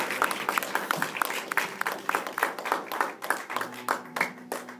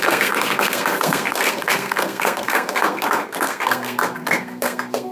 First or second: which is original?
first